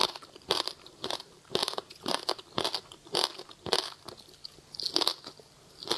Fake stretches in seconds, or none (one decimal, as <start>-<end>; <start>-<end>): 0.0-2.4